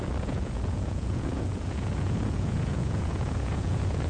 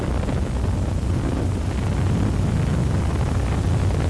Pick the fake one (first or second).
first